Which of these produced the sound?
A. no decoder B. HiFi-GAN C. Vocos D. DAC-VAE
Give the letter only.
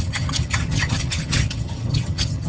B